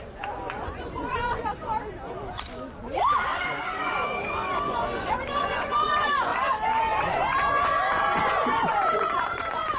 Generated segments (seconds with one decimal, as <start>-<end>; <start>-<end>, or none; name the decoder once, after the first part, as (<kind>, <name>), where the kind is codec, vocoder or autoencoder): 0.0-1.5 (vocoder, Vocos); 3.4-6.3; 6.8-9.8